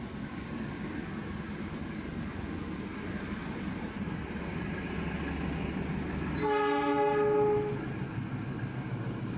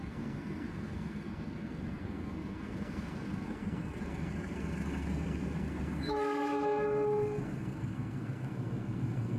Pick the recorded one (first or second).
first